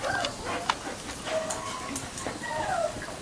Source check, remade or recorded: recorded